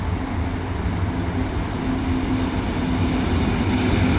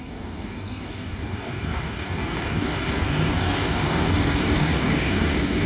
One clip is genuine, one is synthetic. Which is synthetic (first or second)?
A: second